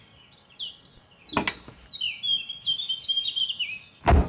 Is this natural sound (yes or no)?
yes